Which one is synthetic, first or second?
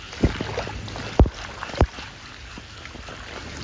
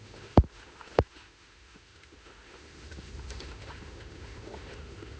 second